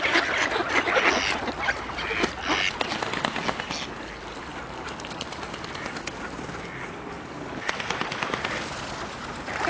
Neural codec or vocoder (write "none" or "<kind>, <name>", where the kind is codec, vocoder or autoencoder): none